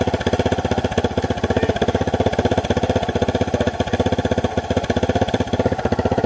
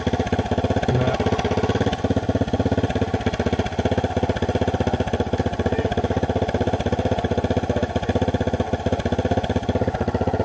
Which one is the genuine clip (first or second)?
second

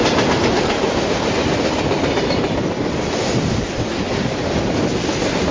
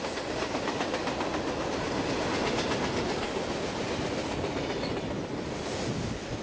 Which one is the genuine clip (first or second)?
second